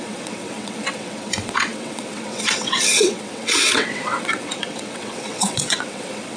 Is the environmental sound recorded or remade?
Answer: remade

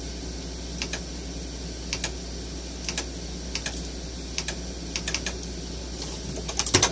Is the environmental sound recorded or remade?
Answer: recorded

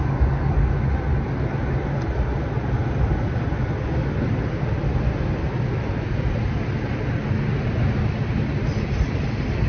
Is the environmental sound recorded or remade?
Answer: recorded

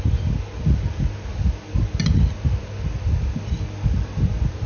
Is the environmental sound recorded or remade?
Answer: recorded